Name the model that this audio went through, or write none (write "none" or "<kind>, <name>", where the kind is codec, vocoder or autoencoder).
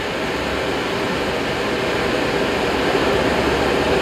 none